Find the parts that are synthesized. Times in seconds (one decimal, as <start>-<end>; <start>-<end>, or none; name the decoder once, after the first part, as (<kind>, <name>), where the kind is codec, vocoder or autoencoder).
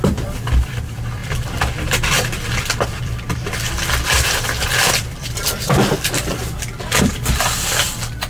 0.0-6.4 (vocoder, BigVGAN v2); 7.1-8.3